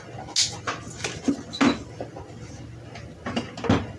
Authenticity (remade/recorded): recorded